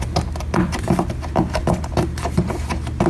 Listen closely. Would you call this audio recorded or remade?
recorded